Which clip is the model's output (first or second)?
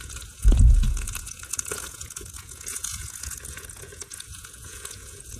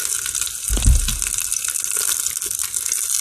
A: first